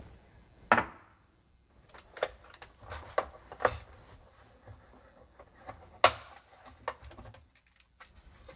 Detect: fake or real real